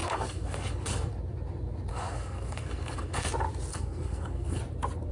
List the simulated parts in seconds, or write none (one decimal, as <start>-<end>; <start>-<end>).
0.0-1.1; 1.9-3.3; 3.7-4.6